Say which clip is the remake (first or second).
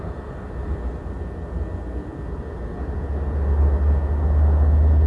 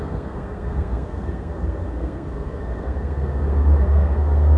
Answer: second